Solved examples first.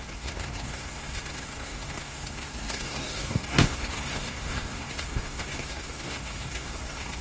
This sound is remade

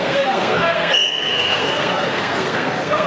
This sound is remade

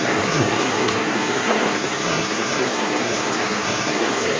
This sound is remade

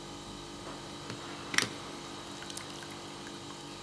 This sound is recorded